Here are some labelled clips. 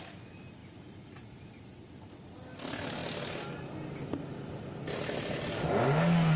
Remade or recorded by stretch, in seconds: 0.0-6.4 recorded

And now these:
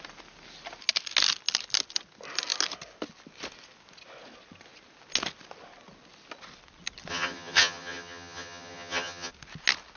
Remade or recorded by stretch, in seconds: 0.0-7.1 recorded; 7.1-9.3 remade; 9.3-10.0 recorded

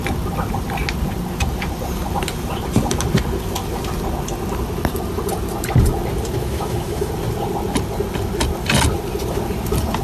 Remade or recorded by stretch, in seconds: 0.0-6.4 recorded; 6.4-7.1 remade; 7.1-10.0 recorded